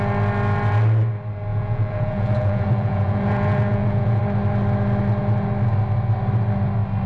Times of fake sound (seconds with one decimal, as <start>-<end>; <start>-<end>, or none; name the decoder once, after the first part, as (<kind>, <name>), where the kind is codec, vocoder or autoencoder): 1.5-4.2 (vocoder, Vocos)

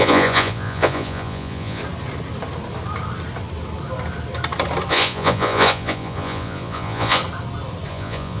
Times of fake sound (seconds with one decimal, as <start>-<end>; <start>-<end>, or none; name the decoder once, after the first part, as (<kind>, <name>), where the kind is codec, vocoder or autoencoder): 0.0-1.8 (vocoder, Vocos); 4.9-7.2; 7.9-8.4

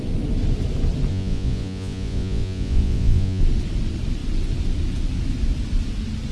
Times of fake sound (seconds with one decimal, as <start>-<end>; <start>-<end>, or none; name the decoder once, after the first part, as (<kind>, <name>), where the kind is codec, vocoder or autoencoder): 1.1-3.4 (vocoder, Vocos)

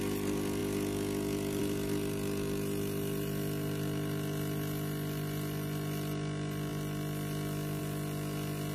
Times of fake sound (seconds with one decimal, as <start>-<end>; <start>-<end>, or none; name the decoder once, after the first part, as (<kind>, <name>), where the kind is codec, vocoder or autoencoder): none